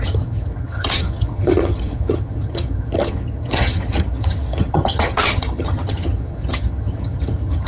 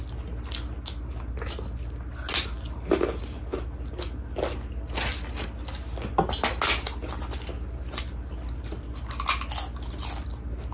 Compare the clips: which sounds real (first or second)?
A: second